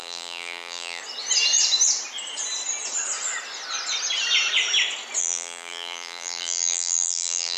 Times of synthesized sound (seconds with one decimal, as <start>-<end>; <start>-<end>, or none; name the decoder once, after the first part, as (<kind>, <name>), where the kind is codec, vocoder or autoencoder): 0.0-1.0 (vocoder, BigVGAN v2); 5.2-7.6